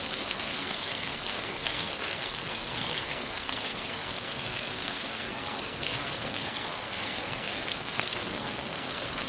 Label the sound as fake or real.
fake